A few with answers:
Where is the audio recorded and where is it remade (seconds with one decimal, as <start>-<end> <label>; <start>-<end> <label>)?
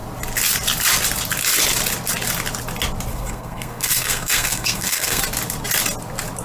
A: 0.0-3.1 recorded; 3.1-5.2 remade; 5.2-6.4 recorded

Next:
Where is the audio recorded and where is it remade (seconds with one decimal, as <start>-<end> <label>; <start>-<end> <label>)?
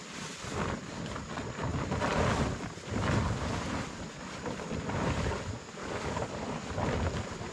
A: 0.0-5.8 recorded; 5.8-6.7 remade; 6.7-7.5 recorded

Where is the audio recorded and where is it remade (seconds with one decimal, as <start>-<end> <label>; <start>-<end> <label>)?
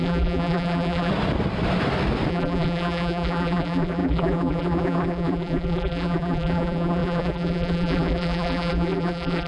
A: 0.0-1.1 remade; 1.1-2.3 recorded; 2.3-9.5 remade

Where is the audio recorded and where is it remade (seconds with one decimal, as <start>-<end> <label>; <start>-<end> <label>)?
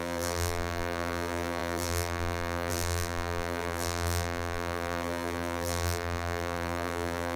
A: 0.0-7.4 remade